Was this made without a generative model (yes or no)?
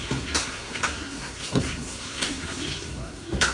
no